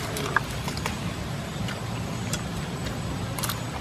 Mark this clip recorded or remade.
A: recorded